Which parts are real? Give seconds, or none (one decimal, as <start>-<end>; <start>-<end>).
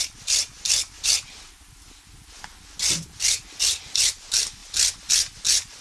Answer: 0.0-5.8